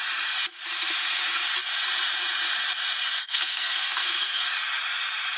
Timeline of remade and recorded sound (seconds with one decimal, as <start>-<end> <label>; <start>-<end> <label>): 0.0-3.2 recorded; 3.2-4.4 remade; 4.4-5.4 recorded